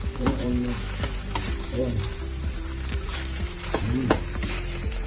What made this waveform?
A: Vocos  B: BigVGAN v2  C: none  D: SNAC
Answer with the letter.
B